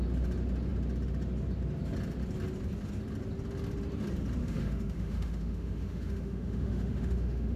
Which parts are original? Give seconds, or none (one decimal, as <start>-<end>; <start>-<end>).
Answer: 0.0-4.4